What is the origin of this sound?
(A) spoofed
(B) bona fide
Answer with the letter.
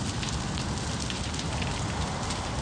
B